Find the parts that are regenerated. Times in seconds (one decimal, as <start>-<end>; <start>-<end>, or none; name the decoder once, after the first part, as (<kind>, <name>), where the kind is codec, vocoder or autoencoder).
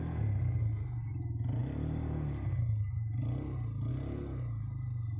none